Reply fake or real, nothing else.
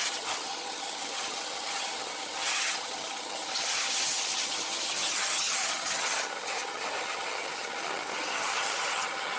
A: fake